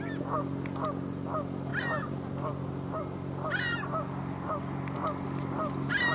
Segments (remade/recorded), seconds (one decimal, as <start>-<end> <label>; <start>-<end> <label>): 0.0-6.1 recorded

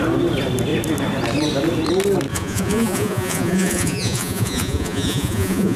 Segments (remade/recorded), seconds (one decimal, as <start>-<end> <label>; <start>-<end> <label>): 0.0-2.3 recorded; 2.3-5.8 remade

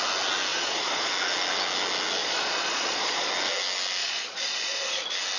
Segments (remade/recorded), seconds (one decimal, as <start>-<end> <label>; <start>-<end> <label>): 0.0-0.5 recorded; 0.5-1.1 remade; 1.1-2.2 recorded; 2.2-3.3 remade; 3.3-4.0 recorded; 4.0-5.0 remade; 5.0-5.4 recorded

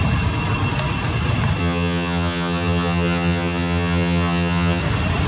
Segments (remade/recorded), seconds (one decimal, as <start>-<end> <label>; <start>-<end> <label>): 0.0-1.6 recorded; 1.6-4.8 remade; 4.8-5.3 recorded

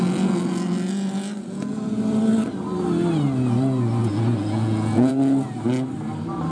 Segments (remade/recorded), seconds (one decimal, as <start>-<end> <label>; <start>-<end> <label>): 0.0-1.4 recorded; 1.4-2.0 remade; 2.0-4.0 recorded; 4.0-5.1 remade; 5.1-6.5 recorded

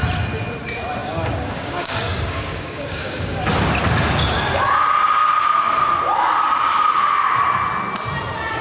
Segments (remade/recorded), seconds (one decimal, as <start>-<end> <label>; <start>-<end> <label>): 0.0-1.0 recorded; 1.0-3.4 remade; 3.4-8.6 recorded

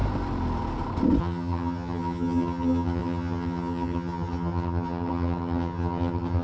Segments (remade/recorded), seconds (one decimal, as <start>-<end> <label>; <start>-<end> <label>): 0.0-1.2 recorded; 1.2-6.4 remade